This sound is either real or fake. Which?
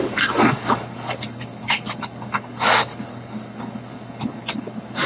fake